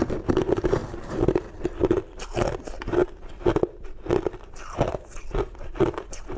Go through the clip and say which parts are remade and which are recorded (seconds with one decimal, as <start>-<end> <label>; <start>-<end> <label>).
0.0-6.4 recorded

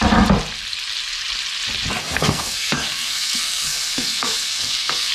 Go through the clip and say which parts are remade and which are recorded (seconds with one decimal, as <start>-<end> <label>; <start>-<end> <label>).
0.0-2.0 recorded; 2.0-5.1 remade

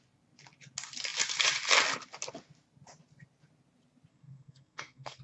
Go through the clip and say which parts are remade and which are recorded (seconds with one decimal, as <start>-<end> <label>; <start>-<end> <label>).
0.0-4.1 recorded; 4.1-5.2 remade

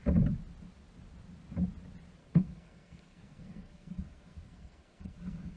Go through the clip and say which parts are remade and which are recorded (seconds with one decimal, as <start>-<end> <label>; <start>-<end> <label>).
0.0-2.2 recorded; 2.2-5.6 remade